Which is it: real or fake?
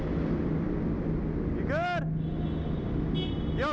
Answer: real